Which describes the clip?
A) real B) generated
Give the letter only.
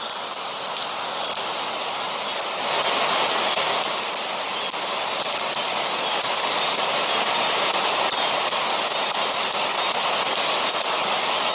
A